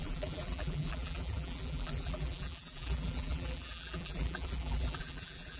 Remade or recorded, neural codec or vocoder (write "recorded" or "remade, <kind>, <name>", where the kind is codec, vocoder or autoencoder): remade, vocoder, BigVGAN v2